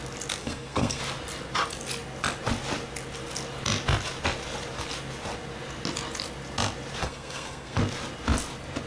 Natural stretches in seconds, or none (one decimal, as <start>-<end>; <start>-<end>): 0.0-0.4; 1.0-7.0; 7.8-8.9